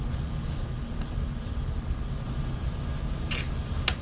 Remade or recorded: recorded